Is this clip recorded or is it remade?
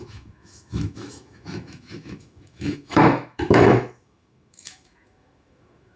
remade